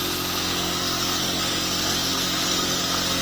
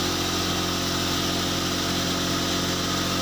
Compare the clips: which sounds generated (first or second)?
first